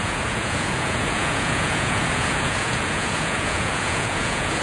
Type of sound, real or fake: fake